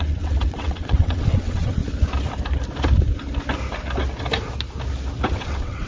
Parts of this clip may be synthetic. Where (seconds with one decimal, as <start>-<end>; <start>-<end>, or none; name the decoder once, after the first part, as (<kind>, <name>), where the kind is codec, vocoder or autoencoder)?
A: 0.0-1.8 (vocoder, WaveNeXt); 5.3-5.9